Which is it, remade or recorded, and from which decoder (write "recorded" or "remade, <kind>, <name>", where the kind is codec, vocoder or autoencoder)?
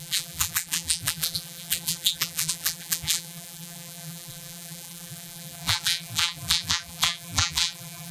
remade, vocoder, BigVGAN v2